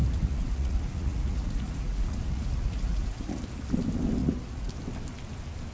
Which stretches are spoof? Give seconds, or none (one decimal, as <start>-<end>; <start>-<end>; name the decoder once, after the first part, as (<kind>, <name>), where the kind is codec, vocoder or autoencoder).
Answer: 0.0-3.4 (vocoder, Vocos); 4.2-4.7